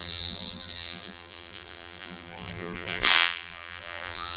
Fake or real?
fake